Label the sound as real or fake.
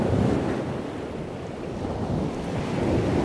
real